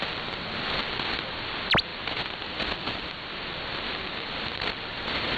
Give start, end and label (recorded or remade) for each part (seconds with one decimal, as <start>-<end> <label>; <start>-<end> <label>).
0.0-1.9 recorded; 1.9-5.4 remade